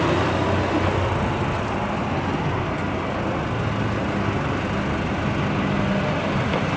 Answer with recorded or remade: recorded